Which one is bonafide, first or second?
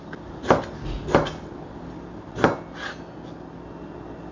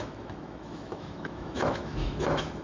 first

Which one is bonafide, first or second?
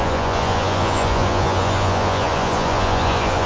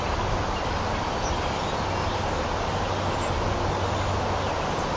second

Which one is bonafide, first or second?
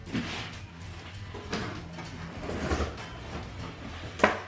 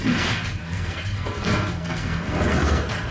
first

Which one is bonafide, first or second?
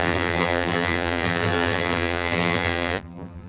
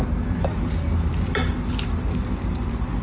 second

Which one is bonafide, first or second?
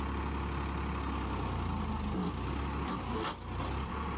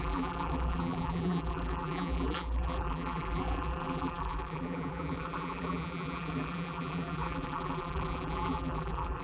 first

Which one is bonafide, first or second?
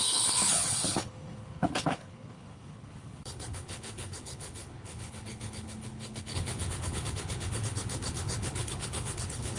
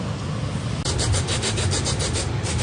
second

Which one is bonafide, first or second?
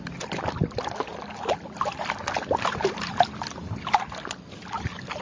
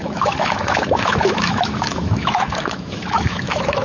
first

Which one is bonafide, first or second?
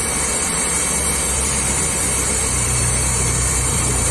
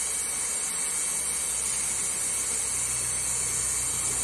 second